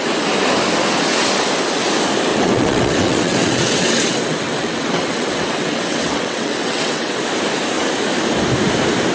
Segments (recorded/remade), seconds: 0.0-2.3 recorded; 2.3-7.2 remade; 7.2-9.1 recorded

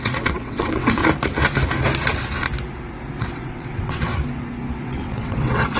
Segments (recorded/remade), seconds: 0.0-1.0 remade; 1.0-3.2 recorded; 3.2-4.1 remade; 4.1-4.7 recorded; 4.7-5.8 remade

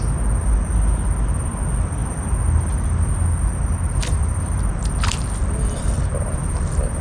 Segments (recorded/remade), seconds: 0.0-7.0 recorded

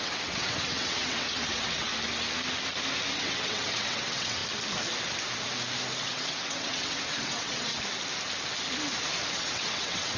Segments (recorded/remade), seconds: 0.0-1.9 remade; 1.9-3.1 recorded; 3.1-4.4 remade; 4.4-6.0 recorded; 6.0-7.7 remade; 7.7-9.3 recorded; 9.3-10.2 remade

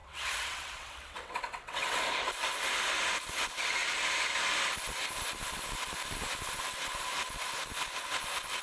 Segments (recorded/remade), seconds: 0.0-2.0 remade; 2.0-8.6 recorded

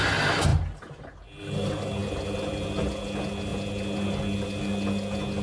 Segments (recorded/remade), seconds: 0.0-5.4 recorded